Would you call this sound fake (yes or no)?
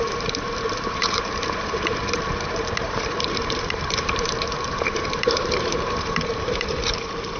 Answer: yes